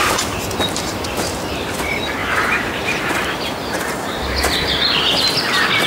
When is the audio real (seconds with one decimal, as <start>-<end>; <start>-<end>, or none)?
0.0-2.2; 3.1-3.6; 4.4-5.9